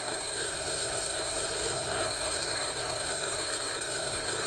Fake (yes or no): yes